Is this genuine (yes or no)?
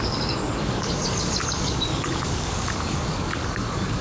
no